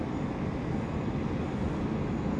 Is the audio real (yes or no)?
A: yes